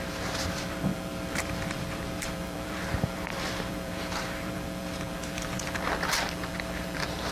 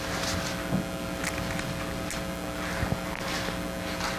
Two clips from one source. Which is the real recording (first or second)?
second